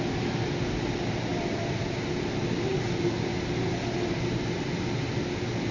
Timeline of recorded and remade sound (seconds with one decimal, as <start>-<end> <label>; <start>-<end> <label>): 0.0-1.3 recorded; 1.3-1.8 remade; 1.8-2.7 recorded; 2.7-3.2 remade; 3.2-5.7 recorded